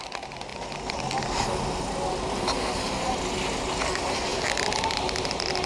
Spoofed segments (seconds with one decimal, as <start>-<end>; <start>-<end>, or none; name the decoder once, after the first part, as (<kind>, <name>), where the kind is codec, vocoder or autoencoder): none